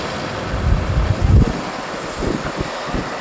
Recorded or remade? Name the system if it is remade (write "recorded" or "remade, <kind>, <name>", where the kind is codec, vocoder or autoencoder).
recorded